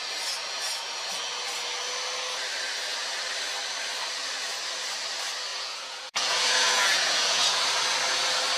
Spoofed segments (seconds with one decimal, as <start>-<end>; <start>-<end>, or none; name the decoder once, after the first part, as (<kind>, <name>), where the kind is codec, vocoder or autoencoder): 5.5-7.6 (vocoder, Vocos)